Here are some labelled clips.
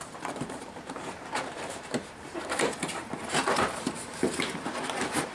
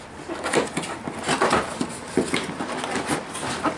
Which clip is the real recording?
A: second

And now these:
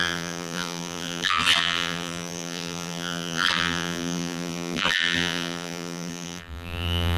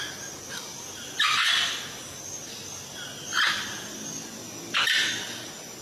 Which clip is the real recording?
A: second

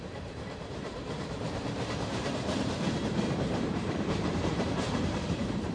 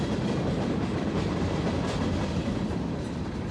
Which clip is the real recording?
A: second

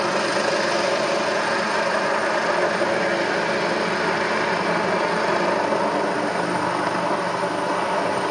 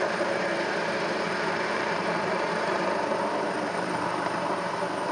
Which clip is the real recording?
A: first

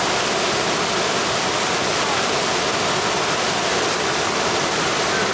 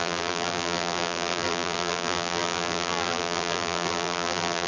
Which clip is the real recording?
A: first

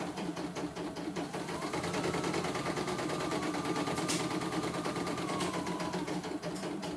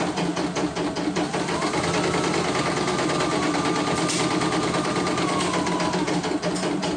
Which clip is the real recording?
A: second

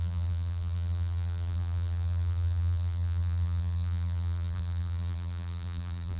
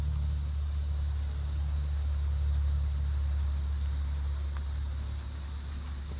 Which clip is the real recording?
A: second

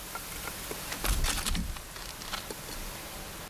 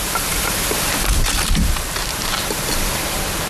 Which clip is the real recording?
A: first